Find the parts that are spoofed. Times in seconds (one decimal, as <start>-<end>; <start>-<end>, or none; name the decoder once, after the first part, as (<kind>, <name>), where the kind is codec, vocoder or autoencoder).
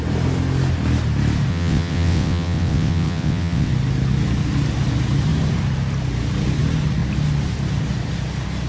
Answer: 1.5-3.7 (vocoder, WaveNeXt)